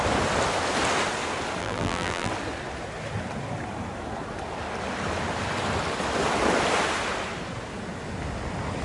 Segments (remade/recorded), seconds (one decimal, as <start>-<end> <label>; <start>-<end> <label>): 0.0-1.6 recorded; 1.6-2.3 remade; 2.3-8.8 recorded

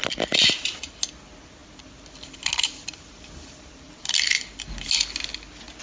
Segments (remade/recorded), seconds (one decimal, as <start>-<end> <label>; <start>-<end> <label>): 0.0-5.8 recorded

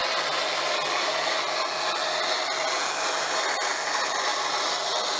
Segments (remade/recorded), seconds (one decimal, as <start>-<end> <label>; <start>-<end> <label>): 0.0-5.2 recorded

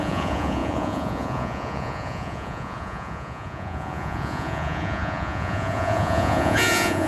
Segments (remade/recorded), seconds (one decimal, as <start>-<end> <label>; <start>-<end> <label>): 0.0-7.1 remade

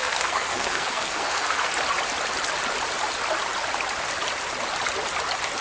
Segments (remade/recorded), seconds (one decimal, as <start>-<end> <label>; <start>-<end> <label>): 0.0-1.7 remade; 1.7-5.6 recorded